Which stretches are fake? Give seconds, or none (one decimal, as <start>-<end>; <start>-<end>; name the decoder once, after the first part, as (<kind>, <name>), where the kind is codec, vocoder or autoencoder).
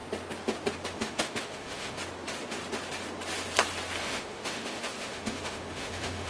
0.9-2.0 (autoencoder, DAC-VAE); 4.0-6.3